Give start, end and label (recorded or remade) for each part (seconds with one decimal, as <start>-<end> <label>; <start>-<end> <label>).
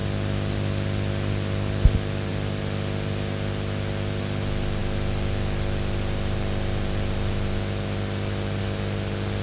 0.0-9.4 recorded